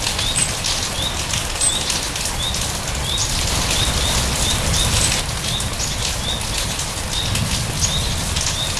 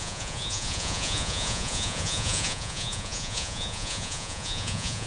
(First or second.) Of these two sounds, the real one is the first